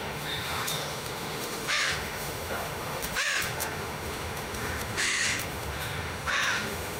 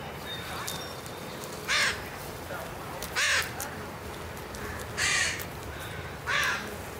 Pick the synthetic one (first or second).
first